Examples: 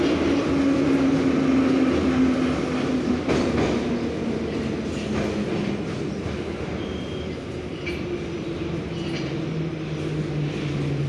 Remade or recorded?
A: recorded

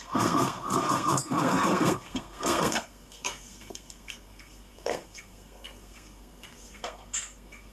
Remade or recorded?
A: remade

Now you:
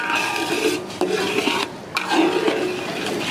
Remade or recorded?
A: recorded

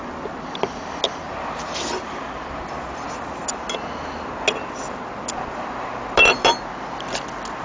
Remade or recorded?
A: recorded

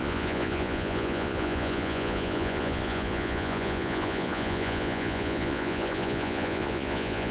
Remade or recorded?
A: remade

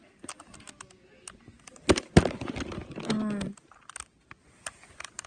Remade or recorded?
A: recorded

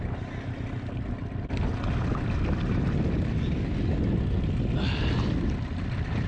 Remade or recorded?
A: recorded